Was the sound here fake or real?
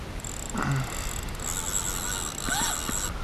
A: real